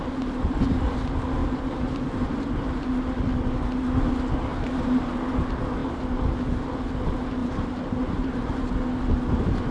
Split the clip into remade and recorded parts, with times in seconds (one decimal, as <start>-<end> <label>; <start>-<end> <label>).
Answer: 0.0-1.4 recorded; 1.4-2.5 remade; 2.5-4.5 recorded; 4.5-5.1 remade; 5.1-7.4 recorded; 7.4-8.7 remade; 8.7-9.7 recorded